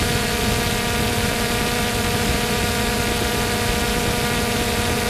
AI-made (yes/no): no